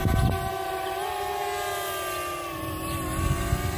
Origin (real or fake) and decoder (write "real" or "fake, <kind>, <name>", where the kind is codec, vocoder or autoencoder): real